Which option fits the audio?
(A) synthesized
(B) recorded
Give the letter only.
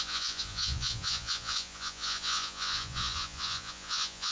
A